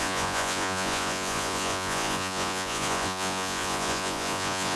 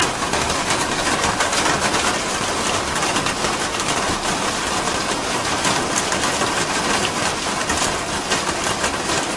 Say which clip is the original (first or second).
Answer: second